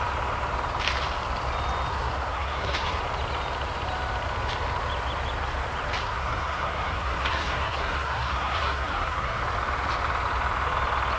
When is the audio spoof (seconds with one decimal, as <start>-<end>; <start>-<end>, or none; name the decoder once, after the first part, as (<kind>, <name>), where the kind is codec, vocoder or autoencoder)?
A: 1.9-3.0 (codec, SNAC); 6.0-9.4